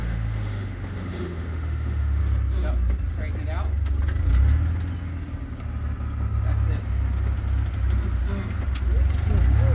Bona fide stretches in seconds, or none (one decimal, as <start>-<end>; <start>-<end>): 2.2-9.7